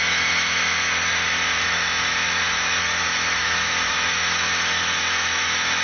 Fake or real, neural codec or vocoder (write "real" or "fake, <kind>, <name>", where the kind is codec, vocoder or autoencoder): fake, autoencoder, DAC-VAE